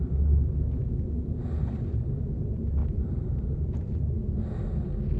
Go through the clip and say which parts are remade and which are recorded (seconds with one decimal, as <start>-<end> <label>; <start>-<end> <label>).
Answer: 0.0-1.3 recorded; 1.3-1.8 remade; 1.8-2.8 recorded; 2.8-4.0 remade; 4.0-5.2 recorded